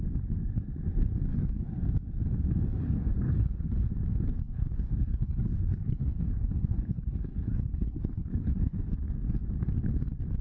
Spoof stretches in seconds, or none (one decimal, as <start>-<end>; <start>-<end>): 1.3-1.8; 2.7-3.9; 4.4-8.9